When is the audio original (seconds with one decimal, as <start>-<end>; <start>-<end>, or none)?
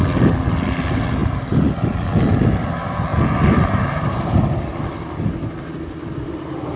0.0-4.7; 5.3-6.8